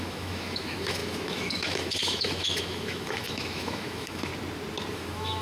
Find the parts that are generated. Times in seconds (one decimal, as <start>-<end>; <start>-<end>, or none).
0.0-4.3; 4.9-5.4